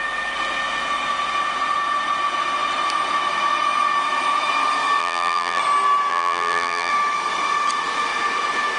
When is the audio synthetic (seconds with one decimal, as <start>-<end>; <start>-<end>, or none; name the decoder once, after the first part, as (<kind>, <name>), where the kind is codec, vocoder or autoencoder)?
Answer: 5.0-5.6 (vocoder, BigVGAN v2); 6.1-6.9